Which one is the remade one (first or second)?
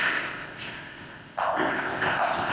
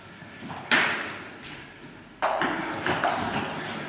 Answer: first